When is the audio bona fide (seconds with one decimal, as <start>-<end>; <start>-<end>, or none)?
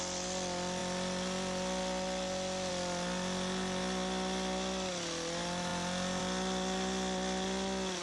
0.0-8.0